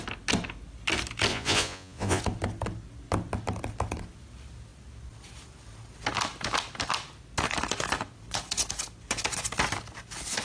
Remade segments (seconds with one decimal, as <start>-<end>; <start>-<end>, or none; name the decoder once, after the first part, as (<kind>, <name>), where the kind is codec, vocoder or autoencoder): 1.3-2.2 (vocoder, Vocos)